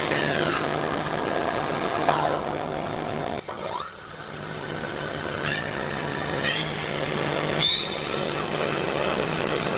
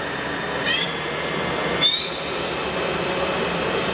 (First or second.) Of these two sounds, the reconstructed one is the first